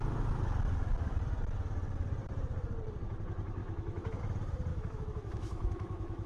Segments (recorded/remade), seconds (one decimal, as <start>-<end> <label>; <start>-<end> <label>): 0.0-3.6 recorded; 3.6-4.2 remade; 4.2-4.7 recorded; 4.7-6.3 remade